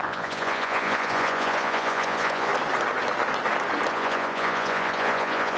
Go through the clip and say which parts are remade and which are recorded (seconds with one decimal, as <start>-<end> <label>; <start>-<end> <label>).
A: 0.0-2.5 remade; 2.5-3.9 recorded; 3.9-5.6 remade